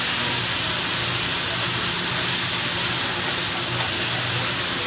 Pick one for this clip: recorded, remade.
recorded